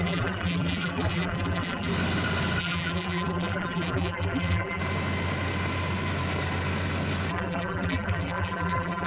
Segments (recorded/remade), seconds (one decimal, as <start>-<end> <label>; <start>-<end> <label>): 0.0-1.9 remade; 1.9-2.6 recorded; 2.6-4.8 remade; 4.8-7.3 recorded; 7.3-9.1 remade